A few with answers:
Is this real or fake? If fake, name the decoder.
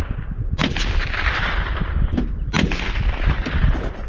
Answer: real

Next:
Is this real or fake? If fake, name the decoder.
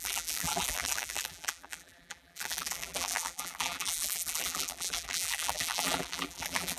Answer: fake, vocoder, BigVGAN v2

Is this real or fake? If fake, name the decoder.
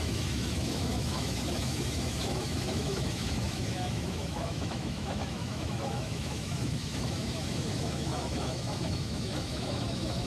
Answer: fake, autoencoder, DAC-VAE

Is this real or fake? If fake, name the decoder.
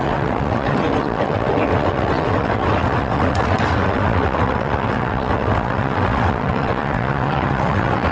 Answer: fake, vocoder, WaveNeXt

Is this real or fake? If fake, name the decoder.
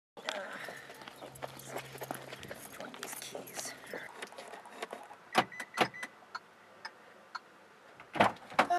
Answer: real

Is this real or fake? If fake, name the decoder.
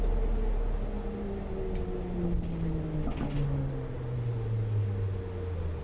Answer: real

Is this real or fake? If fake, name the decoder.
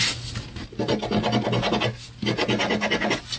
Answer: real